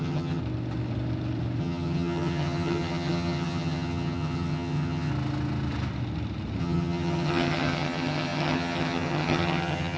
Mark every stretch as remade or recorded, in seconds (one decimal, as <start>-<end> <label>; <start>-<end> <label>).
0.0-0.4 remade; 0.4-1.6 recorded; 1.6-5.1 remade; 5.1-6.6 recorded; 6.6-10.0 remade